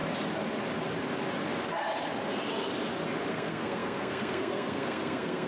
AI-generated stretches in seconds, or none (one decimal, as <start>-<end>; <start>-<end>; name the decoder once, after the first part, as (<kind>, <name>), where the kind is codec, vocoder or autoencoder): 3.3-5.5 (codec, SNAC)